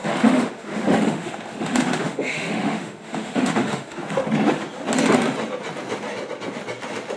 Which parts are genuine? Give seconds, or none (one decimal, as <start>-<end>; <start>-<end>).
4.3-7.2